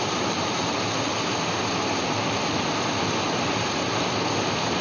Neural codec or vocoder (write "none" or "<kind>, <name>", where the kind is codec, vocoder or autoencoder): none